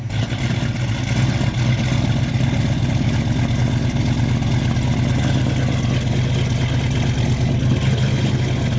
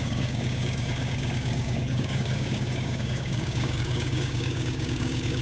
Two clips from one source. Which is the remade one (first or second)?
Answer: second